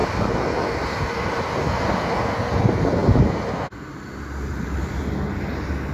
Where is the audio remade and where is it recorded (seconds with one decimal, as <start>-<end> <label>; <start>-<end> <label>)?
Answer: 0.0-5.9 recorded